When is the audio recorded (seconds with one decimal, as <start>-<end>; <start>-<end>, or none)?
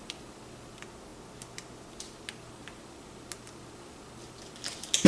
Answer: 0.0-5.1